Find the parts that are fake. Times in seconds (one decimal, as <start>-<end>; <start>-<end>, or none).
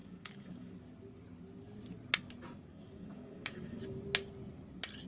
0.0-0.7; 2.7-3.8